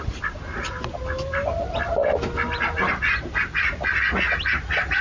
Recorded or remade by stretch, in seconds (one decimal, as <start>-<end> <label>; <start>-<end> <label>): 0.0-5.0 recorded